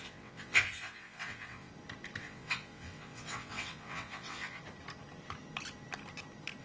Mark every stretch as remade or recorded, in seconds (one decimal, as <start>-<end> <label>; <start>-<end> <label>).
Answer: 0.0-1.7 remade; 1.7-2.2 recorded; 2.2-4.6 remade; 4.6-6.6 recorded